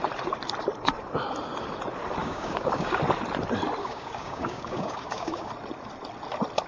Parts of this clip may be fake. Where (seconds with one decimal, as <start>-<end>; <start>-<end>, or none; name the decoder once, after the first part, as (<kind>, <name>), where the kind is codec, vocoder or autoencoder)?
2.2-3.0 (codec, DAC); 3.8-5.5